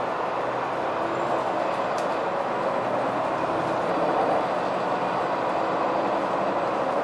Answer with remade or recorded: recorded